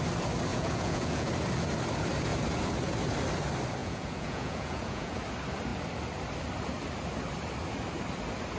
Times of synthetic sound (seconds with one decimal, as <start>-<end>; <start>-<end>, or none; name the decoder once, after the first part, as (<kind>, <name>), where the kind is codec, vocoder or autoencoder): 0.5-1.3 (vocoder, Vocos); 3.8-5.2